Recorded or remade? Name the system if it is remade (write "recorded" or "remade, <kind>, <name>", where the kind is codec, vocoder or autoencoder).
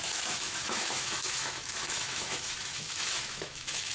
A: remade, autoencoder, DAC-VAE